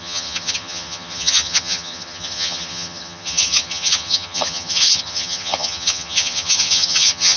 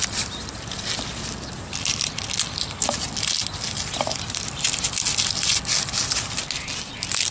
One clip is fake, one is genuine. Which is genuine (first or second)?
second